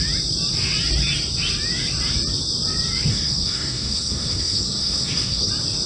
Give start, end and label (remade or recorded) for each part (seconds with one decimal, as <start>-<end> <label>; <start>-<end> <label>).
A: 0.0-3.1 recorded; 3.1-5.5 remade; 5.5-5.9 recorded